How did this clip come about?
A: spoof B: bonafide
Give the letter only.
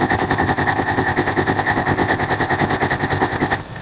A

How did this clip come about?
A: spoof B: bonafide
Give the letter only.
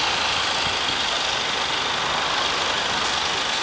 B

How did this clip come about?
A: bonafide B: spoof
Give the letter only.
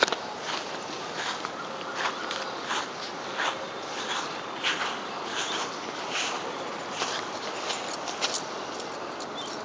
A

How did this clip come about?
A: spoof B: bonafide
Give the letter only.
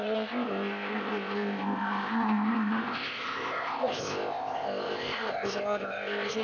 A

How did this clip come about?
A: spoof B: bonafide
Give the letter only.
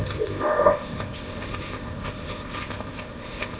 A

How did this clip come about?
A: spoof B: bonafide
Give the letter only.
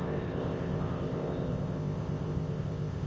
A